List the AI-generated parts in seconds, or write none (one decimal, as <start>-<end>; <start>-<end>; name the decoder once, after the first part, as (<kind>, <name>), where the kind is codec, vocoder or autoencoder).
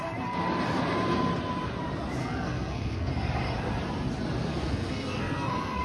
2.2-3.1 (codec, SNAC); 4.5-5.8